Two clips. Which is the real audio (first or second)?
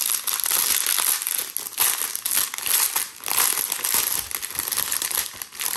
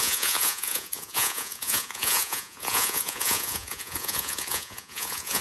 first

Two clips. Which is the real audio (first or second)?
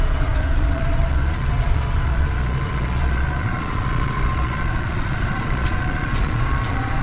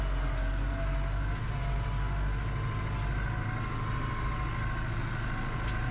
second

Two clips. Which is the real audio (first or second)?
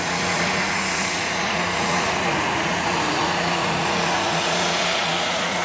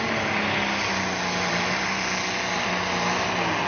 second